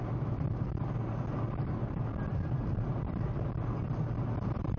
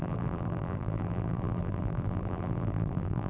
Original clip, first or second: first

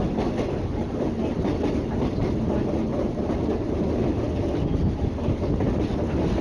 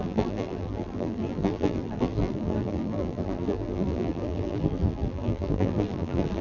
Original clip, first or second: first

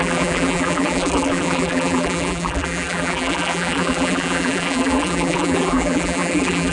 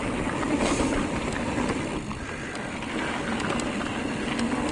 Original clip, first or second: second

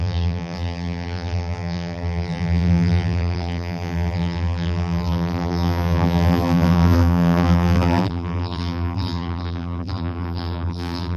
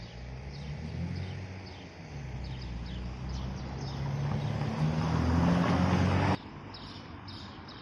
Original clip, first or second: second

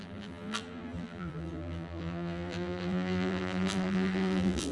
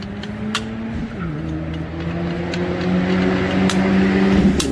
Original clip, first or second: second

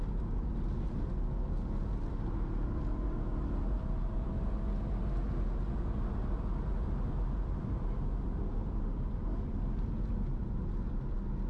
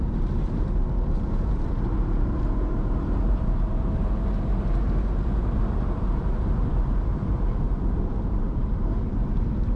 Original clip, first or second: first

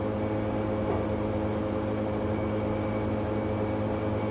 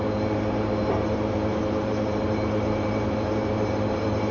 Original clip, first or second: first